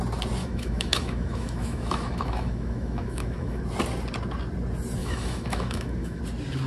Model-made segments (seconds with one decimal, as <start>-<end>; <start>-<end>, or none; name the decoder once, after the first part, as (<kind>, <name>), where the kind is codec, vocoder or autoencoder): 0.4-3.6 (autoencoder, DAC-VAE); 5.0-6.2